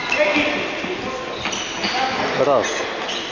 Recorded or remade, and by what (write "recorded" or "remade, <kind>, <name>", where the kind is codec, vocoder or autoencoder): recorded